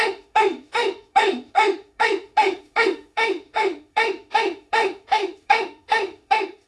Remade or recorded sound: remade